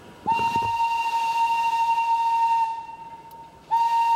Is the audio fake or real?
real